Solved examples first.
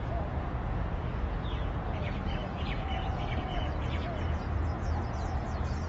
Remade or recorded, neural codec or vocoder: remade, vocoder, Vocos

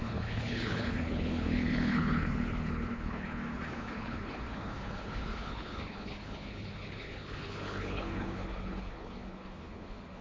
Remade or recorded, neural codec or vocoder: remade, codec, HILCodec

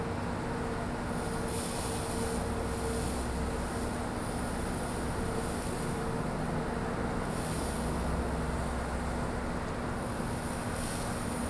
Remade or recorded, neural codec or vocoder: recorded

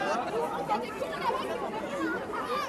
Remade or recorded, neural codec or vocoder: remade, vocoder, BigVGAN v2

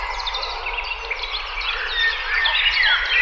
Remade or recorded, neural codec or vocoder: recorded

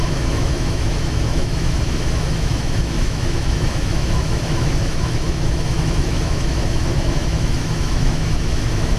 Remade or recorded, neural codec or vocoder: remade, autoencoder, DAC-VAE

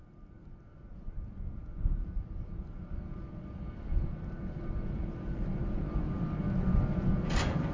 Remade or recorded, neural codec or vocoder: remade, vocoder, BigVGAN v2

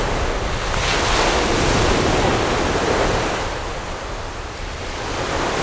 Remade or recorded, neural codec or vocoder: recorded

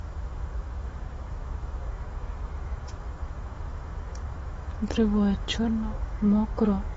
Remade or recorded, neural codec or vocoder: remade, autoencoder, DAC-VAE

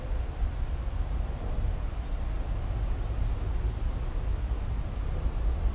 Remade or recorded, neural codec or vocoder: recorded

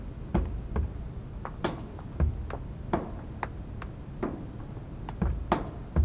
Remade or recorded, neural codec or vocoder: recorded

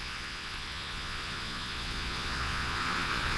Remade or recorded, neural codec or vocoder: remade, vocoder, Vocos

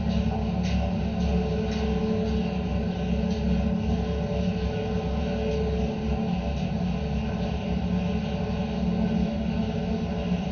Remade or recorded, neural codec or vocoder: recorded